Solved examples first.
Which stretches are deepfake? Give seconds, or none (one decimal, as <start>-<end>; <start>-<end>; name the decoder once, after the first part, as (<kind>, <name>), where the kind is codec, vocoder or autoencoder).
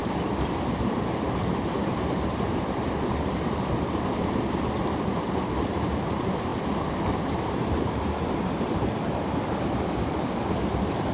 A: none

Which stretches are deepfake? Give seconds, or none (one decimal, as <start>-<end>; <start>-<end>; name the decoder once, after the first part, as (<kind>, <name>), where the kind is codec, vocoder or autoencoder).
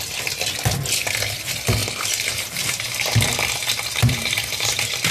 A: 1.8-5.1 (vocoder, BigVGAN v2)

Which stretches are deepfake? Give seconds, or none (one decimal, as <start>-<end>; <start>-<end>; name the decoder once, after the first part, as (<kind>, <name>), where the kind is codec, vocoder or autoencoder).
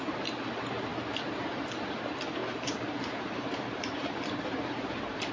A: 2.4-4.2 (vocoder, BigVGAN v2)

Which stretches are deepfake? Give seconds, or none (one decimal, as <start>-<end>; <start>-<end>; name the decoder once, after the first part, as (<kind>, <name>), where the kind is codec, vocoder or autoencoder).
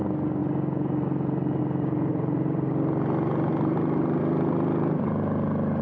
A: 2.1-2.7 (vocoder, BigVGAN v2); 3.5-4.2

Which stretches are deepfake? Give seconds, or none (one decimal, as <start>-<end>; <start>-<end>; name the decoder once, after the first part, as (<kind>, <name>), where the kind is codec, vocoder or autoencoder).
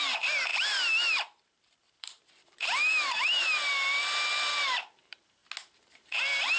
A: 0.0-5.4 (vocoder, BigVGAN v2); 5.9-6.6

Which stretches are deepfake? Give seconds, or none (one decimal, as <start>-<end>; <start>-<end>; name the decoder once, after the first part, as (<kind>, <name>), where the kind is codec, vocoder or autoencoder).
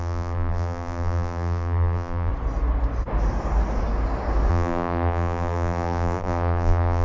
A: 0.0-2.3 (vocoder, BigVGAN v2); 4.5-7.0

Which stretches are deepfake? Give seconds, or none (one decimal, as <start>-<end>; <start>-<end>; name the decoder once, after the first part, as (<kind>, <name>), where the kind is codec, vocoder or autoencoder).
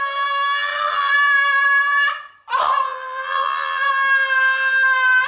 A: 0.7-3.9 (vocoder, BigVGAN v2)